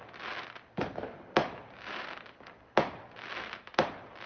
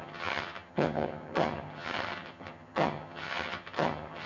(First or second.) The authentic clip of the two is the first